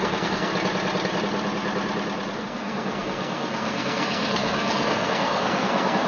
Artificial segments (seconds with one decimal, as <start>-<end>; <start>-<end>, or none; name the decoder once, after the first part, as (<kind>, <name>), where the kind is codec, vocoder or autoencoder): 0.0-0.5 (codec, SNAC); 2.4-6.1